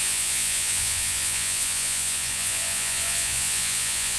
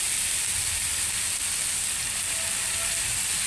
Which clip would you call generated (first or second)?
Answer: first